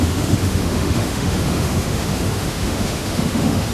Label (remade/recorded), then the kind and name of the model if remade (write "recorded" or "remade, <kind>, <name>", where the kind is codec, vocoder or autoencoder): remade, autoencoder, DAC-VAE